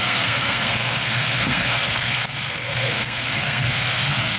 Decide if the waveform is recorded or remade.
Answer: remade